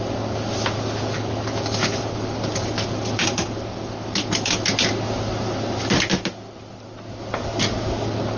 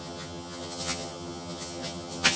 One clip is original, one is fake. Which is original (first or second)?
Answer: first